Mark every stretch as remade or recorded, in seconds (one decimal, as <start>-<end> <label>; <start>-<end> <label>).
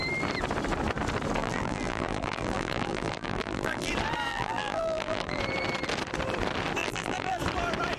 0.0-1.4 recorded; 1.4-3.9 remade; 3.9-4.3 recorded; 4.3-5.4 remade; 5.4-6.8 recorded; 6.8-7.4 remade; 7.4-8.0 recorded